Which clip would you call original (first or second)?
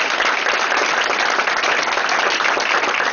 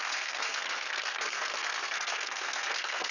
first